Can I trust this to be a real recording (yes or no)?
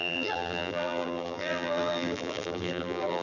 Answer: no